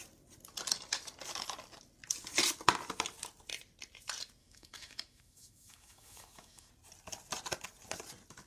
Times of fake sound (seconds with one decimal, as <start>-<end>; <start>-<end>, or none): 4.4-6.7